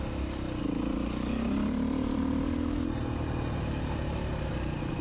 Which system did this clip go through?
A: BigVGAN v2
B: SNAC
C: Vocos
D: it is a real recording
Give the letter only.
D